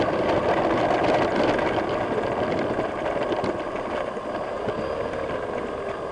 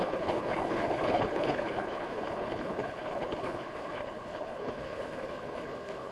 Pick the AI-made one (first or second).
second